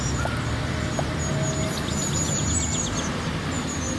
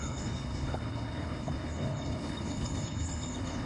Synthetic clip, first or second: second